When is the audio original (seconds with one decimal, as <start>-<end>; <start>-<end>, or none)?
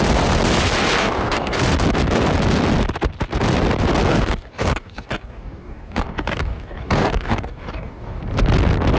0.0-1.0; 1.6-4.1; 8.2-9.0